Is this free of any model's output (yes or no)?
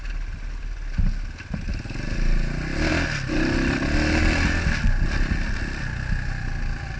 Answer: yes